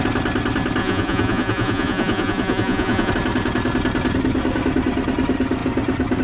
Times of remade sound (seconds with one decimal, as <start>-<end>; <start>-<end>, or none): 0.8-3.1